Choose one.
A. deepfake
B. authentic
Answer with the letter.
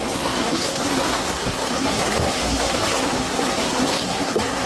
A